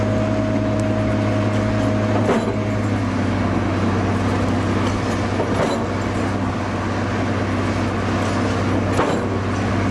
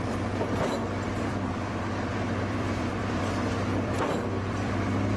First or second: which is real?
first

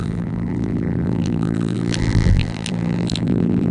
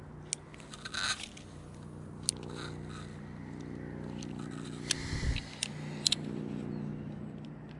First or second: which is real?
second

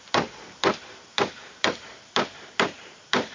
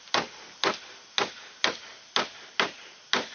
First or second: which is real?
second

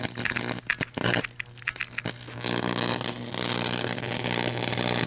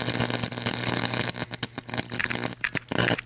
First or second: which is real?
first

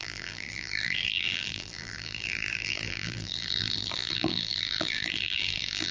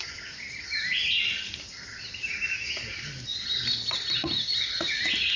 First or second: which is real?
second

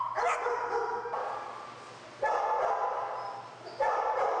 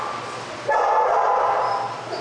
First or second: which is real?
first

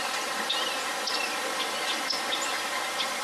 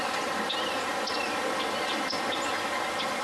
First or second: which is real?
second